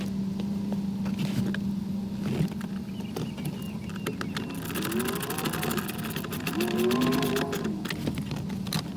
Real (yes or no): yes